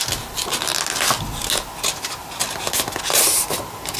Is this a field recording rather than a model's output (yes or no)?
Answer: yes